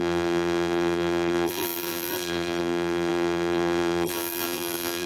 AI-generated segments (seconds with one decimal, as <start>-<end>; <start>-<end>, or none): 0.0-5.1